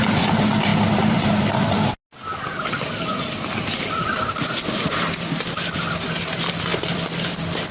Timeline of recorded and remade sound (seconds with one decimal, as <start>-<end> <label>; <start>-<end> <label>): 0.0-0.7 recorded; 0.7-1.5 remade; 1.5-6.7 recorded; 6.7-7.3 remade; 7.3-7.7 recorded

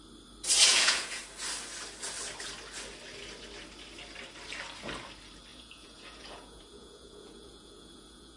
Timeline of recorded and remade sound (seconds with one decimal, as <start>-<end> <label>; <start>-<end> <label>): 0.0-0.7 recorded; 0.7-1.2 remade; 1.2-5.5 recorded; 5.5-8.4 remade

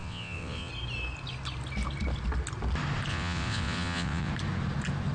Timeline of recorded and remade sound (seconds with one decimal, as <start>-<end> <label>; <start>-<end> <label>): 0.0-0.7 remade; 0.7-3.1 recorded; 3.1-4.3 remade; 4.3-5.1 recorded